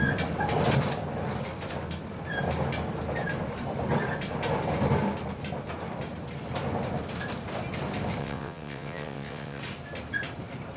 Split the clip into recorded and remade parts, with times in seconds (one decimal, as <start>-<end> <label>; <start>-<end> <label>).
0.0-8.2 recorded; 8.2-9.6 remade; 9.6-10.8 recorded